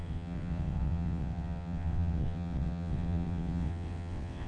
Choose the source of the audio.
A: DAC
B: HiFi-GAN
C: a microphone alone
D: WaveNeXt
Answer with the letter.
D